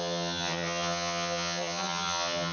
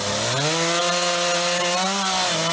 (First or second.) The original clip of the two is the second